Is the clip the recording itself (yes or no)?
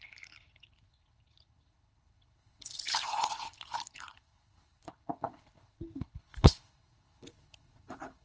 no